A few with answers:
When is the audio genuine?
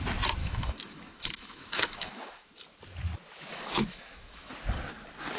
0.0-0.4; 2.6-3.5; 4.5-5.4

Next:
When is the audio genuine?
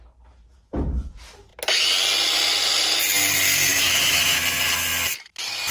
0.0-3.7; 4.4-5.7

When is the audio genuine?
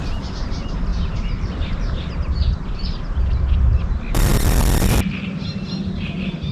0.0-6.5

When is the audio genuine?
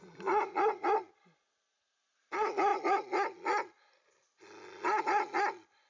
0.0-5.9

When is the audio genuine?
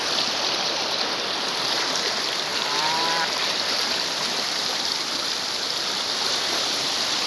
0.0-2.5; 5.0-7.3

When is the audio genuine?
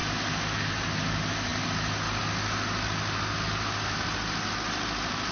0.0-5.3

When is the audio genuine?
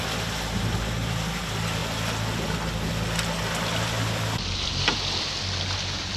0.0-6.2